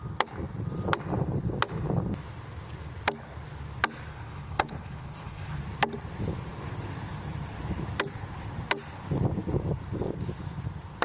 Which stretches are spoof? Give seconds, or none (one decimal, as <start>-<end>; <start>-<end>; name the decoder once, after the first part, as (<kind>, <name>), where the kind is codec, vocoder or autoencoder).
4.1-5.6 (codec, HILCodec)